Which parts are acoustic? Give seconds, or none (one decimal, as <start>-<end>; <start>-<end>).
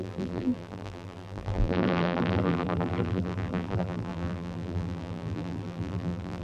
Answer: none